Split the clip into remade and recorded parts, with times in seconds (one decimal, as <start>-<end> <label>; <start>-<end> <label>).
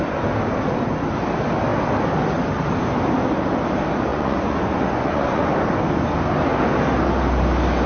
0.0-4.1 recorded; 4.1-5.5 remade; 5.5-7.9 recorded